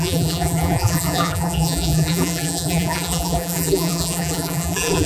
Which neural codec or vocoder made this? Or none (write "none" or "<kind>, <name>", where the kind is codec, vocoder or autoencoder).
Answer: vocoder, BigVGAN v2